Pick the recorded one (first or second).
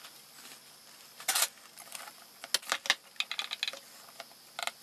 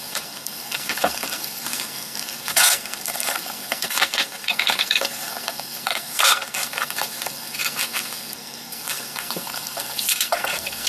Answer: first